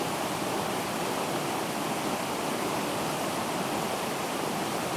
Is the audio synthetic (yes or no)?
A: yes